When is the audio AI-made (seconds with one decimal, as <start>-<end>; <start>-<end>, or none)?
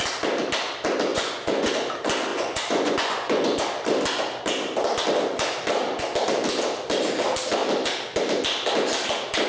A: 1.1-1.7; 2.3-3.6